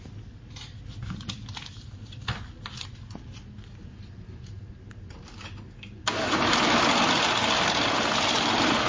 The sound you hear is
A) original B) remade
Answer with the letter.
A